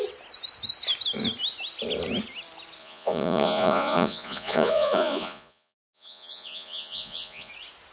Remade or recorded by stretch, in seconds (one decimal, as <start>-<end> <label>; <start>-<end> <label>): 0.0-2.8 recorded; 2.8-7.5 remade; 7.5-7.9 recorded